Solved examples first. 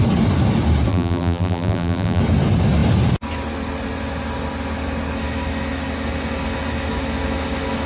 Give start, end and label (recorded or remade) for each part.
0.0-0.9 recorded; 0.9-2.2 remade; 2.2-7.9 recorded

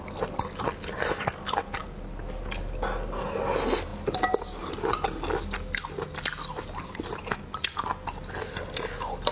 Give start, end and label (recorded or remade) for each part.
0.0-9.3 recorded

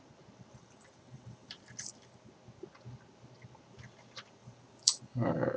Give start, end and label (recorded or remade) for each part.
0.0-0.6 recorded; 0.6-2.3 remade; 2.3-4.4 recorded; 4.4-5.0 remade; 5.0-5.6 recorded

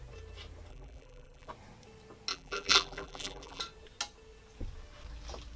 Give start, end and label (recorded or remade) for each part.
0.0-0.7 recorded; 0.7-1.5 remade; 1.5-2.3 recorded; 2.3-3.6 remade; 3.6-5.6 recorded

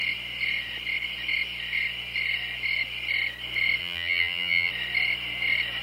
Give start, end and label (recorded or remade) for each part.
0.0-3.8 recorded; 3.8-4.7 remade; 4.7-5.8 recorded

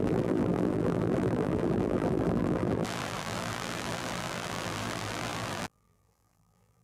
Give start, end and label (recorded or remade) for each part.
0.0-6.8 remade